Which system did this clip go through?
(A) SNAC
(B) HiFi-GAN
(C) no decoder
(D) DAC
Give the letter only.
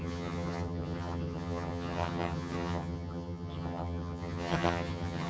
B